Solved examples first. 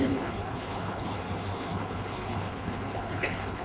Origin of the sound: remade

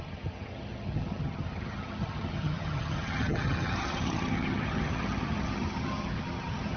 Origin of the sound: remade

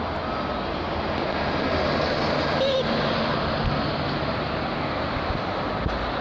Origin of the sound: recorded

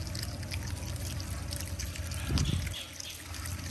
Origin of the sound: recorded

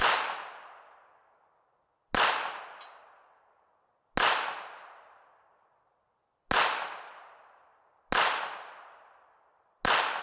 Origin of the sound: recorded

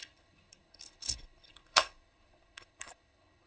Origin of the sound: remade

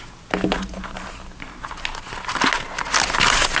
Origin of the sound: recorded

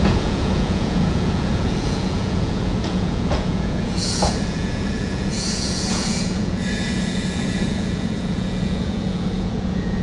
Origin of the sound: remade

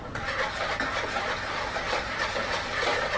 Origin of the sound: recorded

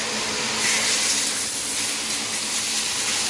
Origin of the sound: recorded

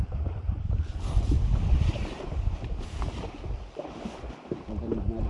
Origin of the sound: recorded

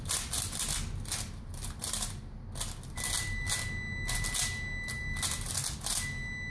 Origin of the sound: recorded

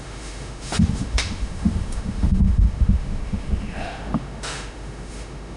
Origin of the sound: remade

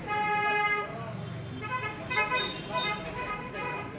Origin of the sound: recorded